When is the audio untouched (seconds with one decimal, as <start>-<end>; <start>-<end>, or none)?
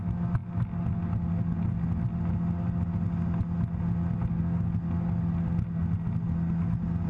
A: 0.0-7.1